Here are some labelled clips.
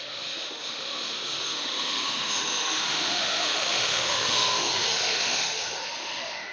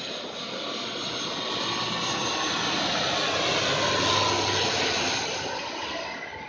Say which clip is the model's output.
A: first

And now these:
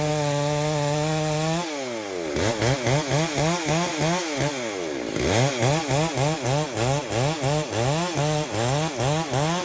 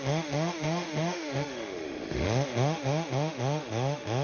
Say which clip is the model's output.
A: second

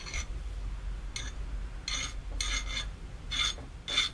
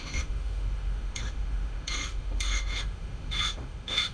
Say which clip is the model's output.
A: second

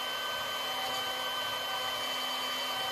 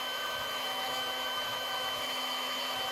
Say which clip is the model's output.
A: second